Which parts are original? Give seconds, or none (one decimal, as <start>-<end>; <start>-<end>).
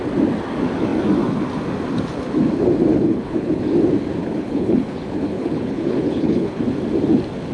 0.0-2.9; 3.6-4.2; 6.6-7.5